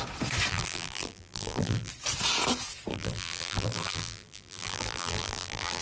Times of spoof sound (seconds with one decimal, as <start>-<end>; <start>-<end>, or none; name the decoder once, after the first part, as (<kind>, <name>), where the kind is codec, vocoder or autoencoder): 0.5-1.9 (vocoder, BigVGAN v2); 2.9-5.8

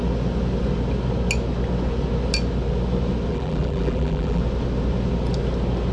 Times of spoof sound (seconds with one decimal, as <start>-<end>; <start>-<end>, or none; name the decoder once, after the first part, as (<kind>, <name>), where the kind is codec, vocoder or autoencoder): 3.3-4.4 (vocoder, BigVGAN v2)

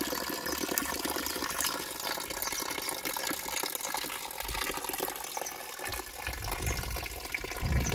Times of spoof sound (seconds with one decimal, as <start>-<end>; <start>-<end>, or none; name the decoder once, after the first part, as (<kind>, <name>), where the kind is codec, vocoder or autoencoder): 0.8-1.8 (vocoder, BigVGAN v2)

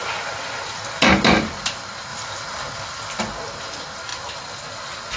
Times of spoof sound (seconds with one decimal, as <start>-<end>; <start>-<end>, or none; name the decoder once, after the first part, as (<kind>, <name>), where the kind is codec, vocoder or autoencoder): 0.0-1.0 (vocoder, BigVGAN v2); 4.1-5.2

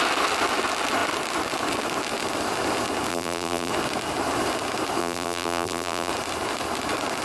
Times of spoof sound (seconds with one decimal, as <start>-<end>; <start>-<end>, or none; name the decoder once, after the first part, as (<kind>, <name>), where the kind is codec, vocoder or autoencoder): 3.1-3.7 (vocoder, BigVGAN v2); 5.0-6.1

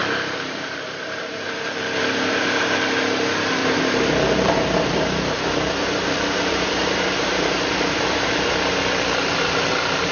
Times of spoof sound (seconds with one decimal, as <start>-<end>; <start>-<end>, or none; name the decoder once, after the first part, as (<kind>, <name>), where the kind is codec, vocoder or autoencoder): 0.0-2.6 (vocoder, BigVGAN v2); 3.6-8.8

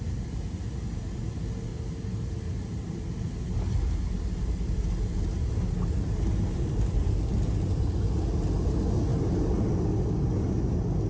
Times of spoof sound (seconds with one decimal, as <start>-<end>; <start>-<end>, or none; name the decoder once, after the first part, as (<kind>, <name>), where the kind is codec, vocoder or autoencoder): 1.7-2.3 (vocoder, BigVGAN v2); 6.5-7.1